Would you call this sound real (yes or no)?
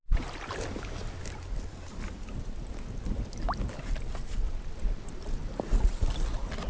yes